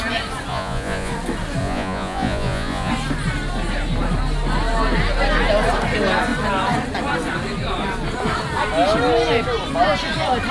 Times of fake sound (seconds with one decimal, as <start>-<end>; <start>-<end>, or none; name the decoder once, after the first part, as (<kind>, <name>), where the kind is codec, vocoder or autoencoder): 0.5-1.1 (vocoder, Vocos); 1.6-2.9